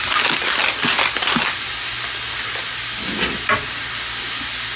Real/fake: real